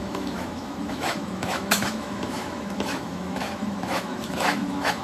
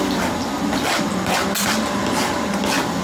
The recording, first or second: second